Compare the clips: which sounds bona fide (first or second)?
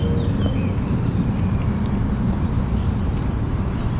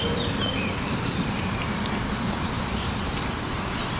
first